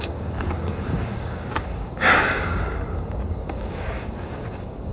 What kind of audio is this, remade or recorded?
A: remade